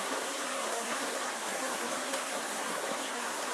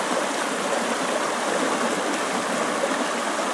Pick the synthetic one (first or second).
first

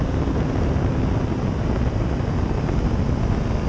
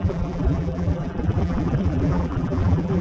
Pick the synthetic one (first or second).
second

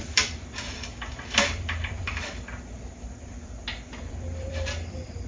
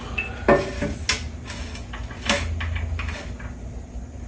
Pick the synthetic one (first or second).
first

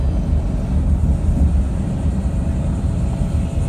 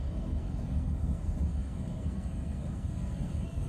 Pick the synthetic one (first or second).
second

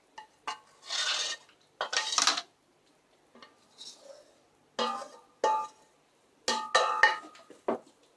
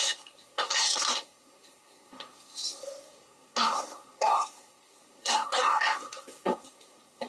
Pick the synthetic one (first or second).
second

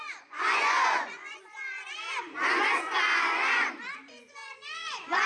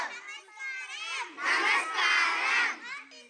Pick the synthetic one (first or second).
first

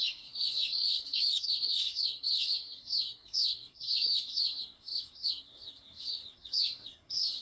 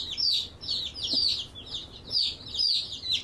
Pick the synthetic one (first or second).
first